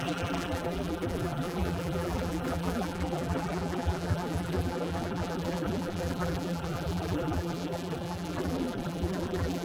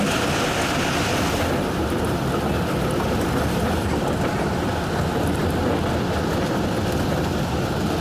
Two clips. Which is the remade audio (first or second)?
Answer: first